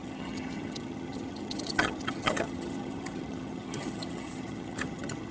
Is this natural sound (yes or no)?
no